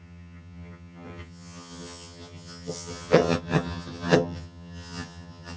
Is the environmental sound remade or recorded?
remade